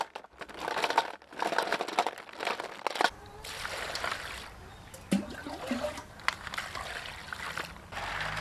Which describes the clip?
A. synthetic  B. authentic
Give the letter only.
B